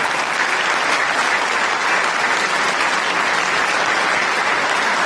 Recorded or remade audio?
recorded